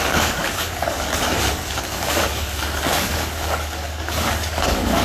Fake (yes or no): yes